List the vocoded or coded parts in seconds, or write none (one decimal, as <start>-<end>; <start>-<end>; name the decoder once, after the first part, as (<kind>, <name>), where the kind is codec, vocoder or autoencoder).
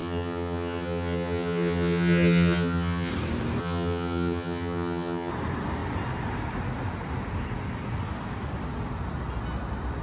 0.0-3.1 (vocoder, HiFi-GAN); 3.6-5.3